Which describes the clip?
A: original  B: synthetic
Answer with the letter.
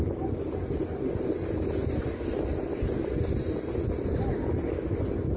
A